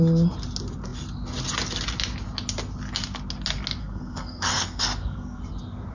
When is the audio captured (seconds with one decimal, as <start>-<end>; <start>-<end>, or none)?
0.0-3.8; 5.4-5.9